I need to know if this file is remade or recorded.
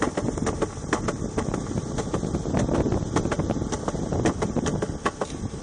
recorded